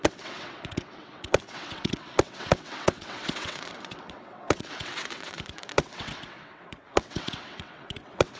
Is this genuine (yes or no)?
no